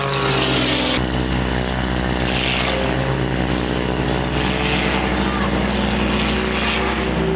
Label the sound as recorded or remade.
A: recorded